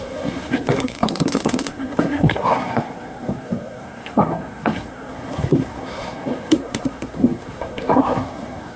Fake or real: fake